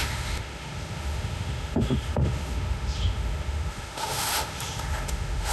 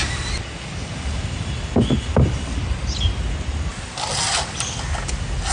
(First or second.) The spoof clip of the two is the first